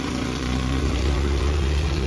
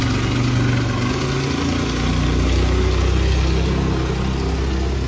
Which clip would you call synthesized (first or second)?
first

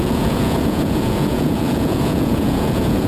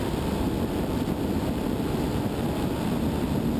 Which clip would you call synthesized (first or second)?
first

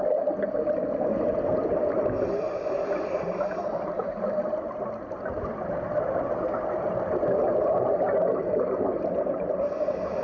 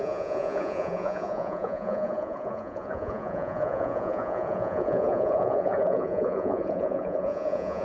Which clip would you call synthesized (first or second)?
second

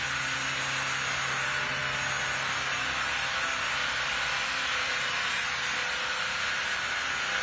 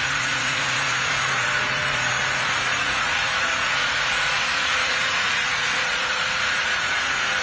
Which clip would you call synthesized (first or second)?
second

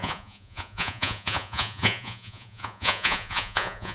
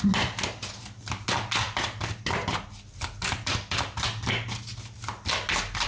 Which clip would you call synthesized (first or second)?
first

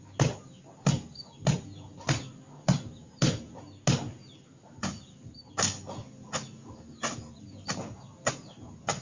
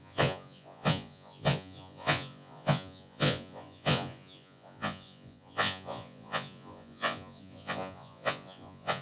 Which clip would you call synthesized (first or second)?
second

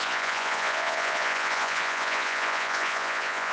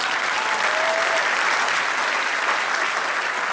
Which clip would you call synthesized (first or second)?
first